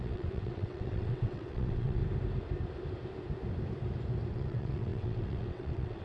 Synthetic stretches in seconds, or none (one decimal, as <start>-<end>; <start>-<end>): 0.0-2.0; 4.3-6.0